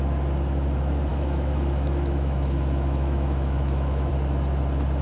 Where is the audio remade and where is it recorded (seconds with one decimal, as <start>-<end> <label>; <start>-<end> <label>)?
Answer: 0.0-1.1 recorded; 1.1-4.1 remade; 4.1-5.0 recorded